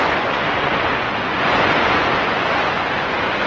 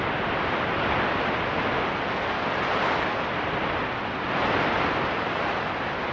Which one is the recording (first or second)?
second